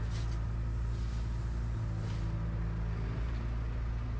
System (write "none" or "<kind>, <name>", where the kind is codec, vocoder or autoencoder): none